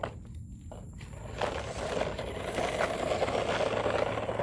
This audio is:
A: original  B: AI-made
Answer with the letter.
A